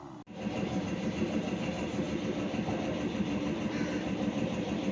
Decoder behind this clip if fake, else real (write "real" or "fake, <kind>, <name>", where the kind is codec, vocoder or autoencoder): real